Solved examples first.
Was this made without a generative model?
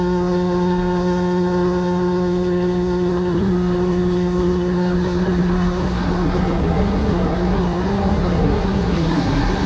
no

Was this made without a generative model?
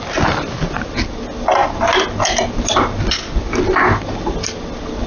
yes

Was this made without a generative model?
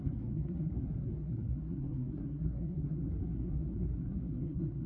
no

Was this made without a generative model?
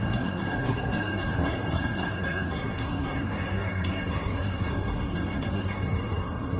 no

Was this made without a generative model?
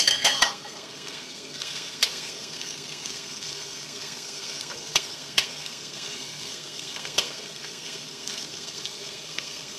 no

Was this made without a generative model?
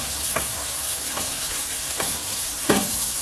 no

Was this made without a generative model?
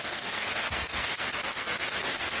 no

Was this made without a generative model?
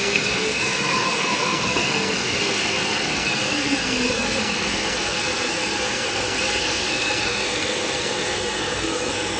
no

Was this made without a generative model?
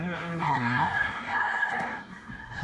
no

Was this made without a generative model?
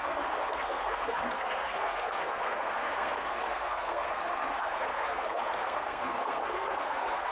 no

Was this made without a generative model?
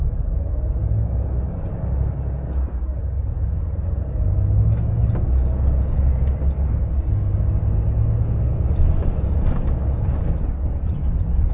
yes